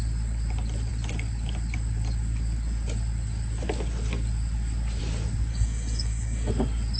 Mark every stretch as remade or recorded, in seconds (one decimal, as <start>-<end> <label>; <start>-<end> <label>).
0.0-5.5 recorded; 5.5-6.5 remade; 6.5-7.0 recorded